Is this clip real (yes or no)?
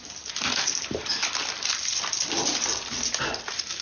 yes